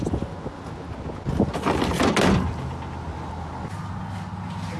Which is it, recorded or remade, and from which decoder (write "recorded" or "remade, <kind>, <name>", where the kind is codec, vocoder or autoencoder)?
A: recorded